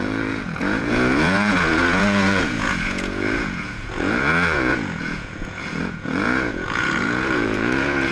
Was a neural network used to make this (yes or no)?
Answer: yes